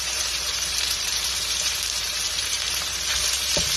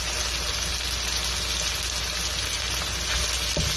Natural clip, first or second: second